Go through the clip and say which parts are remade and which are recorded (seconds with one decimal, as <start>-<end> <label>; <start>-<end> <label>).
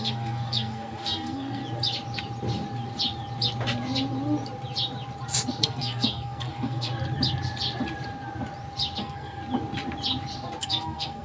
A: 0.0-1.6 remade; 1.6-5.6 recorded; 5.6-6.9 remade; 6.9-9.0 recorded; 9.0-9.4 remade; 9.4-10.6 recorded; 10.6-11.2 remade